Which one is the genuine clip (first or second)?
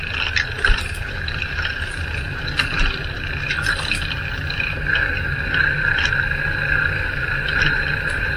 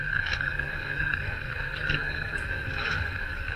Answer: first